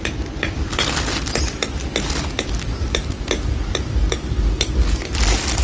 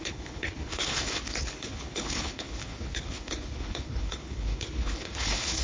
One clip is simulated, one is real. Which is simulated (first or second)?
second